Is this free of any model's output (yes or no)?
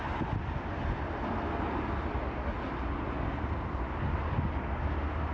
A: yes